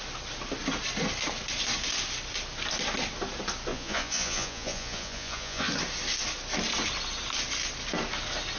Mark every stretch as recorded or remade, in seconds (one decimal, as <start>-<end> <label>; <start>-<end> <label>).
0.0-3.7 recorded; 3.7-5.7 remade; 5.7-8.6 recorded

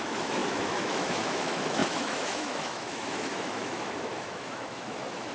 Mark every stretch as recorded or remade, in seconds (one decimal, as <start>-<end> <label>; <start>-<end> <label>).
0.0-5.3 remade

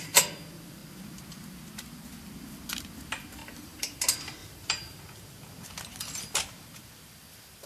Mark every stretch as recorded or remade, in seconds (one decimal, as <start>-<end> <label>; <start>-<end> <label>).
0.0-3.4 recorded; 3.4-4.0 remade; 4.0-4.4 recorded; 4.4-5.0 remade; 5.0-7.7 recorded